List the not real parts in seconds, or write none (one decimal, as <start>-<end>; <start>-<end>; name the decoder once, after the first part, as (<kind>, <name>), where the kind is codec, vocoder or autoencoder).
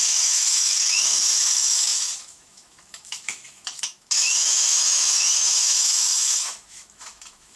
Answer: 0.0-7.6 (autoencoder, DAC-VAE)